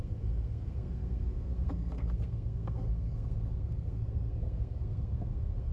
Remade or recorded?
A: remade